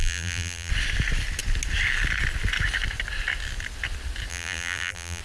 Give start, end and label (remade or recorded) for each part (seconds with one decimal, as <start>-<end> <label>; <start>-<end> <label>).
0.0-0.7 remade; 0.7-4.3 recorded; 4.3-5.2 remade